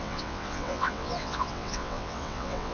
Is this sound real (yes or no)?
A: no